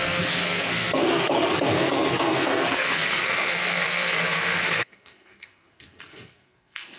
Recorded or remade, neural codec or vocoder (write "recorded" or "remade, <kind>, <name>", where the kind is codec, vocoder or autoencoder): remade, codec, SNAC